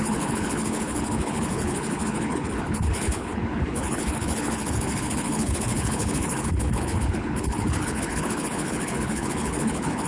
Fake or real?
fake